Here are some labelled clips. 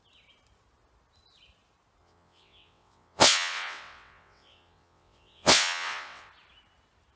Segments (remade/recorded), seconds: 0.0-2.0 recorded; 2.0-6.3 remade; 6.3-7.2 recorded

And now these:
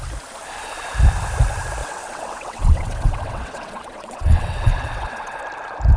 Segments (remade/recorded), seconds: 0.0-1.8 recorded; 1.8-5.4 remade; 5.4-6.0 recorded